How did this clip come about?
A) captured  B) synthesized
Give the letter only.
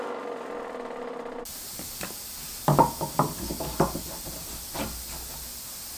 A